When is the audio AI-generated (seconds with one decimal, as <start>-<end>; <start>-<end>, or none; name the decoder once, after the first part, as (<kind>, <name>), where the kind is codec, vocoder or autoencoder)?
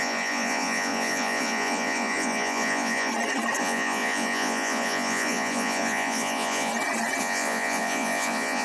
0.0-3.1 (vocoder, Vocos); 3.6-6.7; 7.2-8.6